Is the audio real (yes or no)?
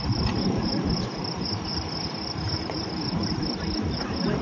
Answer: no